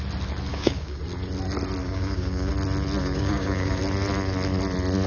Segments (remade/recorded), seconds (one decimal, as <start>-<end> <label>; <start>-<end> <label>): 0.0-0.5 recorded; 0.5-1.0 remade; 1.0-1.8 recorded; 1.8-2.5 remade; 2.5-3.0 recorded; 3.0-3.8 remade; 3.8-5.1 recorded